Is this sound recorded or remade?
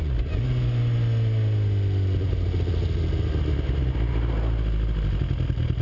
recorded